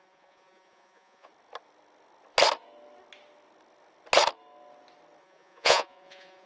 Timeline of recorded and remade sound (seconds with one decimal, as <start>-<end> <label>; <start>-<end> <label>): 0.0-1.3 remade; 1.3-5.2 recorded; 5.2-6.5 remade